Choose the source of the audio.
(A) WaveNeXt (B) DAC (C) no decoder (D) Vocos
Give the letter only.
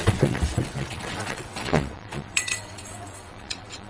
A